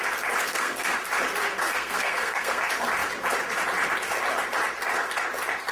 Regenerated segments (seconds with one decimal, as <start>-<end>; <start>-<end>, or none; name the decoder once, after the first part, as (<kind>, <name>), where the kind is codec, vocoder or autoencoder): 0.4-1.0 (codec, SNAC); 1.7-2.6